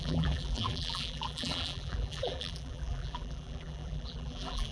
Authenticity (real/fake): fake